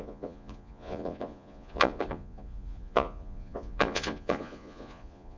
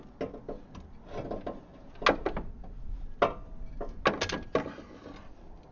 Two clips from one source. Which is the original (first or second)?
second